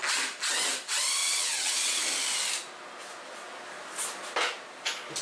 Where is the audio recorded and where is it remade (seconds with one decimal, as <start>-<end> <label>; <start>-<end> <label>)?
0.0-1.2 recorded; 1.2-2.0 remade; 2.0-5.2 recorded